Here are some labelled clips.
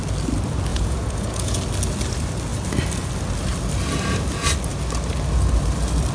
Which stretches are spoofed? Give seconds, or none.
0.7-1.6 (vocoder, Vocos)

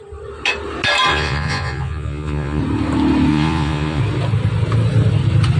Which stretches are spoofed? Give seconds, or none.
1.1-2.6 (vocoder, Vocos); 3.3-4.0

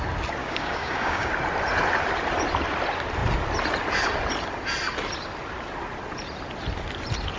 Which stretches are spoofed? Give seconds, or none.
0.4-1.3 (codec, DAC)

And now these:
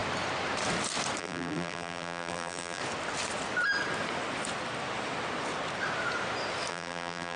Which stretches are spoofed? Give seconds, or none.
1.2-2.8 (vocoder, BigVGAN v2); 6.7-7.4